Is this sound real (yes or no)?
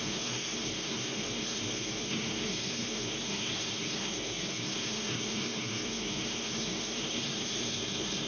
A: no